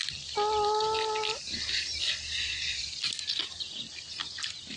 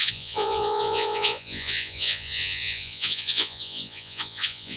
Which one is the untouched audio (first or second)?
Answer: first